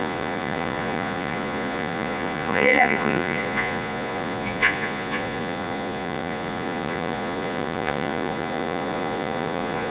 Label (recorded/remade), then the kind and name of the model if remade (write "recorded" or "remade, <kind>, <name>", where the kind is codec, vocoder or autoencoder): remade, vocoder, Vocos